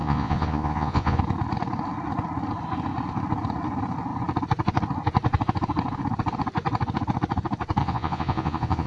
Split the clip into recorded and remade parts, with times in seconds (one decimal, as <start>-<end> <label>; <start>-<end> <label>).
0.0-1.2 remade; 1.2-7.8 recorded; 7.8-8.9 remade